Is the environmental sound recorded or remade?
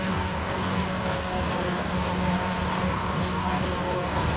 remade